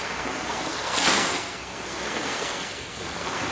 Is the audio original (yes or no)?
no